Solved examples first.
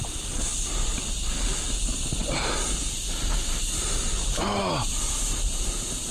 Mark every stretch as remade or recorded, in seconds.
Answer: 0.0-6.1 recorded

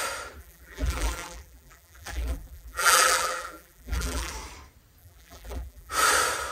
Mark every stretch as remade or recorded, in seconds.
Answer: 0.0-0.4 recorded; 0.4-4.3 remade; 4.3-5.0 recorded; 5.0-5.9 remade; 5.9-6.5 recorded

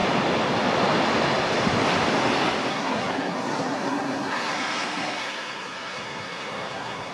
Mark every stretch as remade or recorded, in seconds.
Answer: 0.0-2.7 recorded; 2.7-7.1 remade

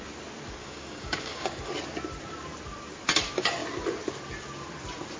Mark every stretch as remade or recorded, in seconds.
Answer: 0.0-0.6 recorded; 0.6-1.7 remade; 1.7-5.2 recorded

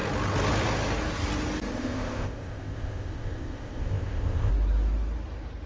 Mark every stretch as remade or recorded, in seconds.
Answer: 0.0-1.7 recorded; 1.7-4.5 remade; 4.5-5.7 recorded

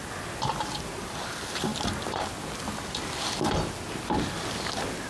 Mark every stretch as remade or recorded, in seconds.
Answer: 0.0-5.1 recorded

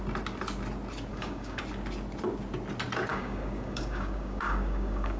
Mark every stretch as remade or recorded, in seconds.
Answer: 0.0-1.1 recorded; 1.1-1.6 remade; 1.6-3.1 recorded; 3.1-5.2 remade

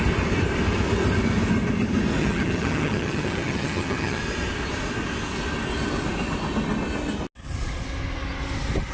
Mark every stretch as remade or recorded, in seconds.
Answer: 0.0-2.2 recorded; 2.2-4.2 remade; 4.2-8.9 recorded